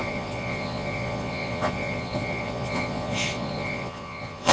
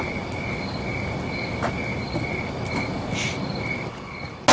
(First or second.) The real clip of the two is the second